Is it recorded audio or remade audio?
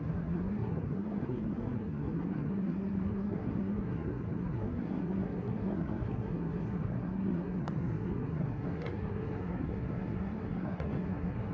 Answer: remade